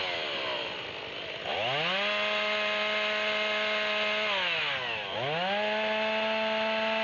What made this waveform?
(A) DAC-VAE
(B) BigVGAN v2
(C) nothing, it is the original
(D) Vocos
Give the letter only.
C